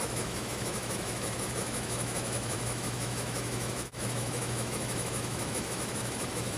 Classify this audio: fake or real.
fake